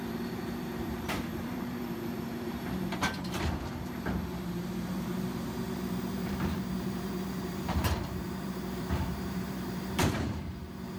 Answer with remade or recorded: remade